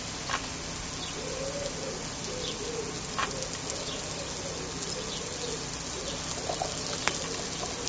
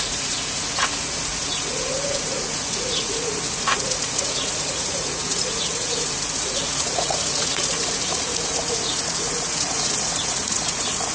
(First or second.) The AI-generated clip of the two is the second